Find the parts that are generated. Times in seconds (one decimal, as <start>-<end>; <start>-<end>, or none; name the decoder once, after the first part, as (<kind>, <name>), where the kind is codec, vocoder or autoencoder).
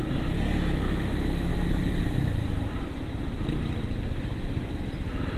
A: 1.5-4.7 (vocoder, BigVGAN v2)